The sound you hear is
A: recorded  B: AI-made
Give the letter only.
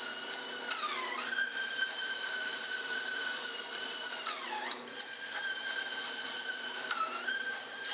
B